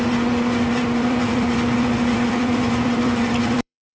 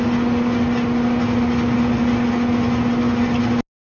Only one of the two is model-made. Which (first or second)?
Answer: first